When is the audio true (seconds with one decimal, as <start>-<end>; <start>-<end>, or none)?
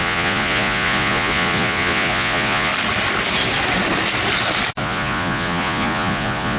2.7-4.8